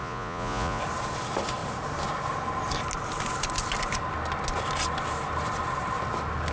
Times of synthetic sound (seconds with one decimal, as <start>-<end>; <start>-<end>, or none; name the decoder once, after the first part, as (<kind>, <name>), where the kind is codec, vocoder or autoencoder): 0.0-0.8 (vocoder, Vocos)